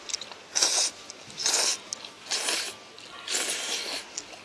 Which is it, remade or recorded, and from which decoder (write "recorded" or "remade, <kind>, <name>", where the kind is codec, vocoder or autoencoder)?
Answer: recorded